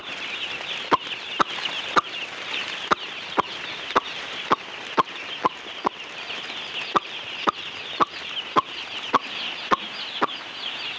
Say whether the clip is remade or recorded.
recorded